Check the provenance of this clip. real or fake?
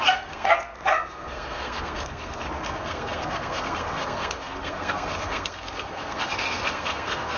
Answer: fake